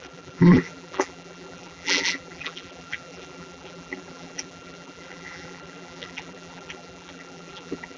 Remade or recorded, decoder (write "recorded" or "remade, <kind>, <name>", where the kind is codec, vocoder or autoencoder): remade, vocoder, BigVGAN v2